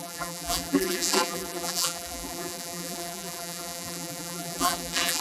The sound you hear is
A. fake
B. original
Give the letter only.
A